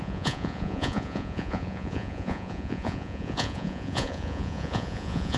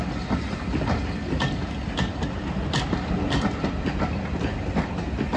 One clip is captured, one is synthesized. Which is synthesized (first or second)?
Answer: first